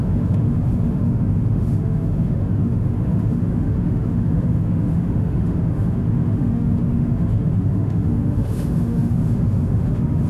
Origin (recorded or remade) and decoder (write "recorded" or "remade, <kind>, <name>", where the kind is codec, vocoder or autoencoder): remade, autoencoder, DAC-VAE